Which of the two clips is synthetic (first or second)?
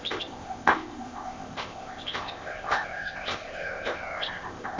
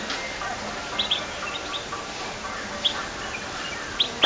first